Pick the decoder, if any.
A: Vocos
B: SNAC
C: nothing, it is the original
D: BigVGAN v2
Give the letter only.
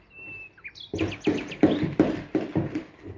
C